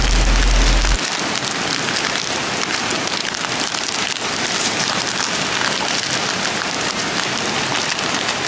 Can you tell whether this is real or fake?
real